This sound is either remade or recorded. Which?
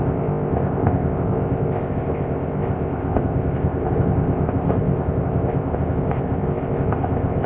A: remade